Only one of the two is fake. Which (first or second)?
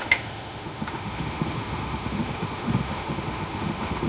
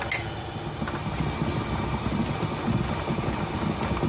first